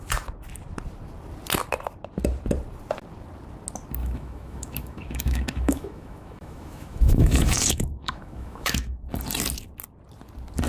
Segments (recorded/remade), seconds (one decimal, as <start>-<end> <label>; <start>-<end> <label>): 0.0-4.0 recorded; 4.0-9.1 remade; 9.1-10.7 recorded